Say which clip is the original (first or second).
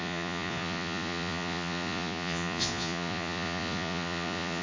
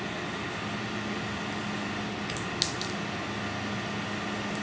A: second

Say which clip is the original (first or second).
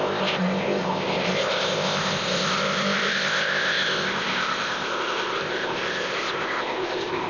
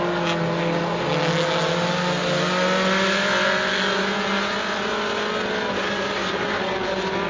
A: second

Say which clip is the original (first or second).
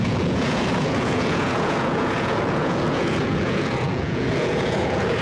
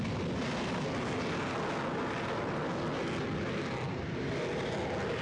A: second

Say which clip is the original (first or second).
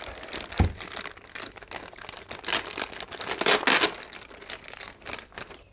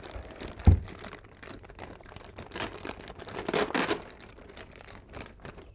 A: first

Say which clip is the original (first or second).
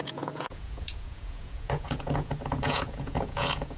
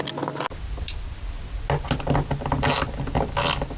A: second